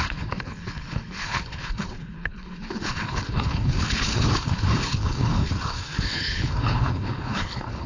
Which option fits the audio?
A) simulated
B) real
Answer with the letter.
A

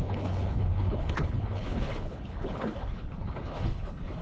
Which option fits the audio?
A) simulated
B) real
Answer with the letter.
A